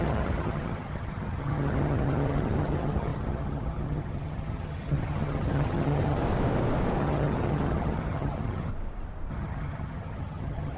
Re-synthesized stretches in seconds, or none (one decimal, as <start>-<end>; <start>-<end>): 0.0-6.2; 7.0-8.7; 9.3-10.8